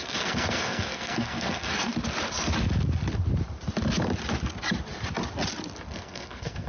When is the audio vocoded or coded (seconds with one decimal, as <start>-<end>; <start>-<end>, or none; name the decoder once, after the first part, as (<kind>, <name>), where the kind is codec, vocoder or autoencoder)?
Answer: 0.0-1.9 (codec, SNAC); 5.9-6.7